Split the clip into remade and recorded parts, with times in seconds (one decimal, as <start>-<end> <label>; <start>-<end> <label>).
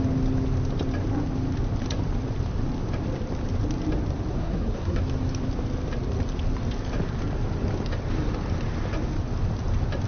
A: 0.0-4.3 recorded; 4.3-5.0 remade; 5.0-10.1 recorded